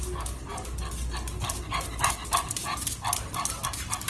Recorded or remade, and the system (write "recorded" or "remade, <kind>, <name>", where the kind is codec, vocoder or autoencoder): recorded